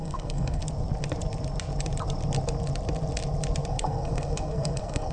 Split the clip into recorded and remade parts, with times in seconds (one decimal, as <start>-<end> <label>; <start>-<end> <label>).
0.0-0.6 remade; 0.6-3.7 recorded; 3.7-5.1 remade